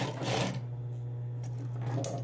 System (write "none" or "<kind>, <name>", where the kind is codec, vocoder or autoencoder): none